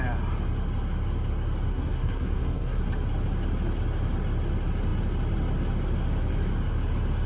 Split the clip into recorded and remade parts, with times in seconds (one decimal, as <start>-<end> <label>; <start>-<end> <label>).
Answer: 0.0-1.7 recorded; 1.7-2.8 remade; 2.8-7.3 recorded